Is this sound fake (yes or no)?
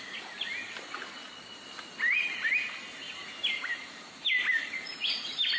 no